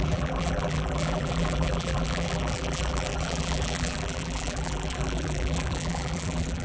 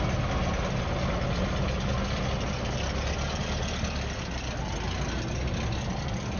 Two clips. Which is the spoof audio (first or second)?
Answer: first